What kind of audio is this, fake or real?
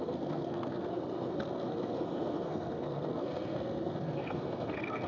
fake